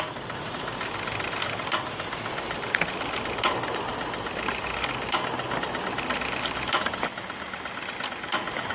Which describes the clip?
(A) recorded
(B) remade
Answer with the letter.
A